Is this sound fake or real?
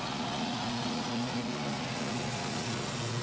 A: fake